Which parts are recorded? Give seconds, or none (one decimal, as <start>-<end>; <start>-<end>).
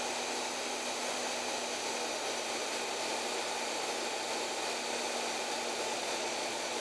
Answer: 0.0-5.9